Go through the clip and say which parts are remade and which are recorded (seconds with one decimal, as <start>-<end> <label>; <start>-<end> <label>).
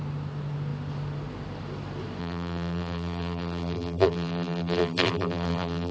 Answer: 0.0-2.2 recorded; 2.2-5.9 remade